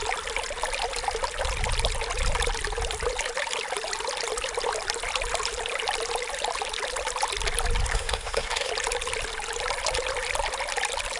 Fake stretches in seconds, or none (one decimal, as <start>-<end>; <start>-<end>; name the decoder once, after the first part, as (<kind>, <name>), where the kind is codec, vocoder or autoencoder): 7.9-8.7 (codec, SNAC)